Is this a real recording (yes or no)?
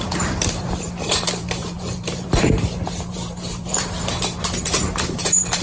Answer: no